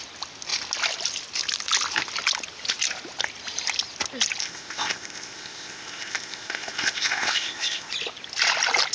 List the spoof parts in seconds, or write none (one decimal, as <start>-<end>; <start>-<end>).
4.4-7.9